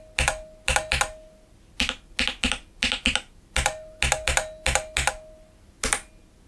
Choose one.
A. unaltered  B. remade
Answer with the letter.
A